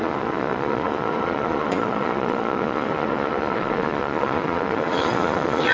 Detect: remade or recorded remade